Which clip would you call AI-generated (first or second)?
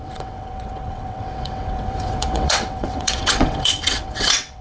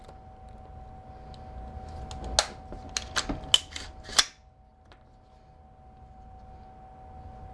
first